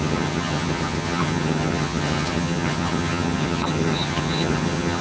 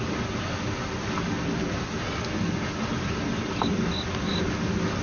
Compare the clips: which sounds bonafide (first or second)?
second